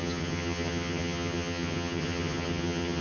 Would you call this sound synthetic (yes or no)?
yes